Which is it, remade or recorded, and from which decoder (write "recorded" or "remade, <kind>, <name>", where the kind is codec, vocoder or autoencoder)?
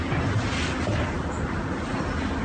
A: recorded